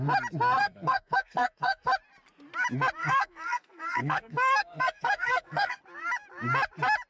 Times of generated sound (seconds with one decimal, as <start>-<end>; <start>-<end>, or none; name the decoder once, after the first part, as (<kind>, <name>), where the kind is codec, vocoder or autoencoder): 0.6-1.9 (codec, SNAC); 3.0-5.8